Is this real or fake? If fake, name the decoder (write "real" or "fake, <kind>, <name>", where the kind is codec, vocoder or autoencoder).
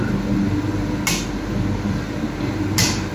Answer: real